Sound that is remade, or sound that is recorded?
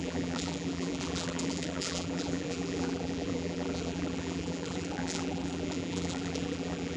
remade